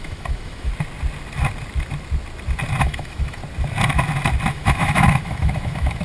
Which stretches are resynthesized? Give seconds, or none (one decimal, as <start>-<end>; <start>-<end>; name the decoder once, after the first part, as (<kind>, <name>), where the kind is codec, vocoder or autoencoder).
0.0-0.7 (autoencoder, DAC-VAE); 2.8-3.4; 4.5-6.0